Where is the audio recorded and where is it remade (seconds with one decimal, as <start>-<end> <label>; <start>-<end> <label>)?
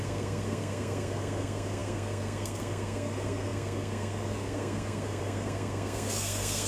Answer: 0.0-6.7 remade